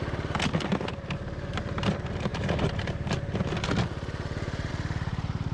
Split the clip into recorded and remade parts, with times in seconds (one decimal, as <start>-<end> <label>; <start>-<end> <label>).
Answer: 0.0-5.5 recorded